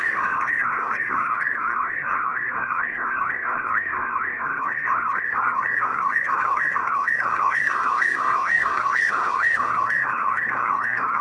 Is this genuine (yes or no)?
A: no